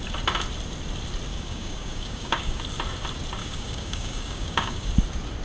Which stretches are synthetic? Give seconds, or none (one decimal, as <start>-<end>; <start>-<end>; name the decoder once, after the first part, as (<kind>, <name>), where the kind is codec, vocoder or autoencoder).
1.3-2.6 (codec, DAC); 3.4-4.9